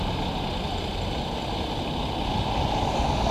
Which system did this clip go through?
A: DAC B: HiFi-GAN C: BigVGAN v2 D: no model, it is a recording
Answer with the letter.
D